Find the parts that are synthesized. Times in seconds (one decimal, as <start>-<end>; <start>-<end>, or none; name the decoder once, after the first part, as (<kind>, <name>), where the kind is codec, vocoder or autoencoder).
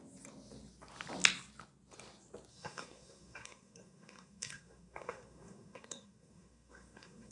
2.5-7.3 (codec, SNAC)